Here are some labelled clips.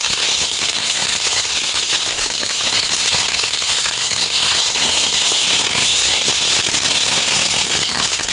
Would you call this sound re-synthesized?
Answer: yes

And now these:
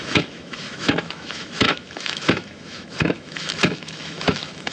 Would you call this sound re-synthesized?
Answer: yes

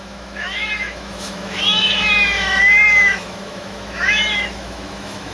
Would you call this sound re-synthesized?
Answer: yes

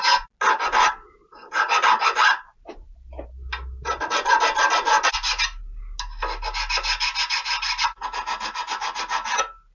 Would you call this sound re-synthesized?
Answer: no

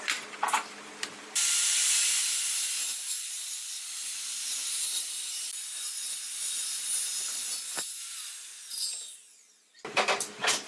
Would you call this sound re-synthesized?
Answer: yes